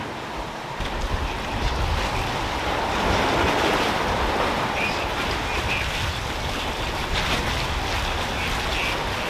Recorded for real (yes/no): yes